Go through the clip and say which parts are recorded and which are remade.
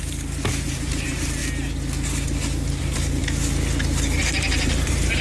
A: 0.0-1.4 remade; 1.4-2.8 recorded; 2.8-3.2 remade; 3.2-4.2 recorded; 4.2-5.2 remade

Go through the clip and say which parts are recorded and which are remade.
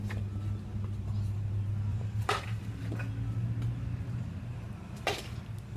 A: 0.0-1.9 recorded; 1.9-2.8 remade; 2.8-5.8 recorded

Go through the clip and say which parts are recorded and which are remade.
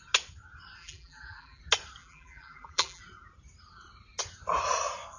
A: 0.0-0.8 recorded; 0.8-1.6 remade; 1.6-2.0 recorded; 2.0-3.0 remade; 3.0-5.2 recorded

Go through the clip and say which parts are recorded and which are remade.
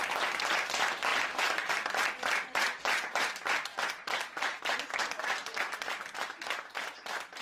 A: 0.0-3.7 recorded; 3.7-4.6 remade; 4.6-7.4 recorded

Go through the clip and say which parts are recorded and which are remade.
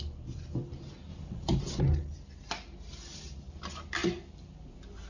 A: 0.0-1.1 recorded; 1.1-1.8 remade; 1.8-5.1 recorded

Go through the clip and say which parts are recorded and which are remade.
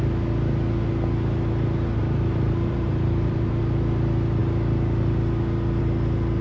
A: 0.0-2.0 recorded; 2.0-3.6 remade; 3.6-6.4 recorded